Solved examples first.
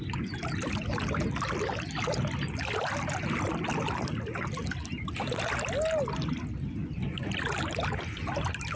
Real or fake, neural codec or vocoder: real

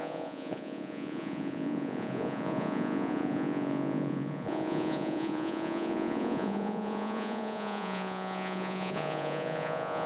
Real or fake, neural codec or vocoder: fake, vocoder, Vocos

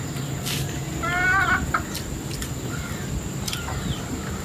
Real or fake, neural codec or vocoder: real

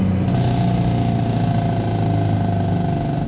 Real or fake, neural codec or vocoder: real